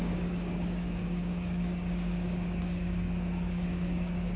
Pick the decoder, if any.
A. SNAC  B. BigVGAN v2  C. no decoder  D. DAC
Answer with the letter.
D